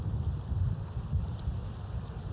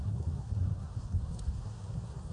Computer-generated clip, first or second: second